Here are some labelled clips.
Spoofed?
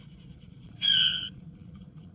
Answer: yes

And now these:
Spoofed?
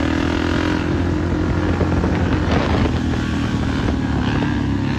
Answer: no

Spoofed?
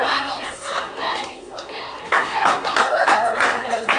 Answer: yes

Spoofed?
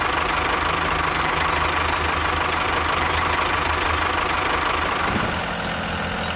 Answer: no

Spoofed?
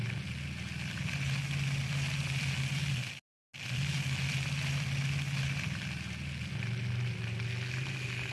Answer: no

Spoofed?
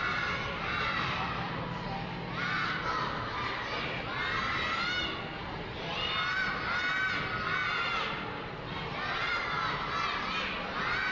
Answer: no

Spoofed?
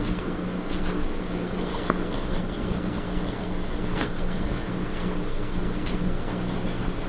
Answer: yes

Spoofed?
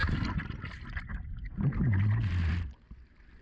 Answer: no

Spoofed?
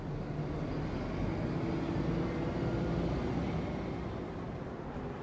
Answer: no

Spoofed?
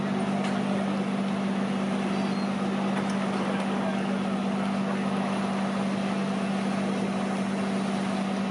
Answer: no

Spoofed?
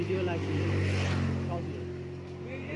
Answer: no